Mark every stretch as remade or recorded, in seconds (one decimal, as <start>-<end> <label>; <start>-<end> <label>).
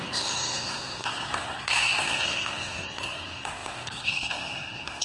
0.0-5.0 remade